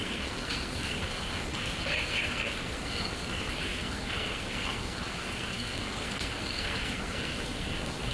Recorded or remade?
remade